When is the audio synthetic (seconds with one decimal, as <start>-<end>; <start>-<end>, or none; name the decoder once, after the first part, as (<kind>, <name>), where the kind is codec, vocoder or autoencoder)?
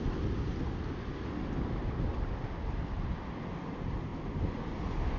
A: none